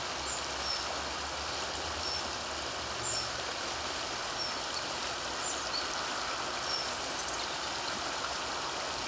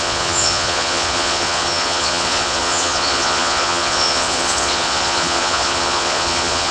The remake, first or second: second